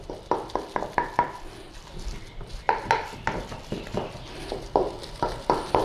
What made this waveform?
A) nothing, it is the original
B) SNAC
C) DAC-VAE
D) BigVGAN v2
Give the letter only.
A